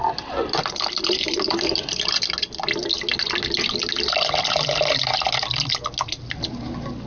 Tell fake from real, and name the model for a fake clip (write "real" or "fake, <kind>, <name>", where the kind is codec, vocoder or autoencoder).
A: real